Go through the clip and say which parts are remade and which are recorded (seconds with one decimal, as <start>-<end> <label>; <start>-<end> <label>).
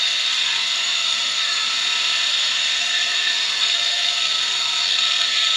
0.0-1.7 remade; 1.7-2.3 recorded; 2.3-5.6 remade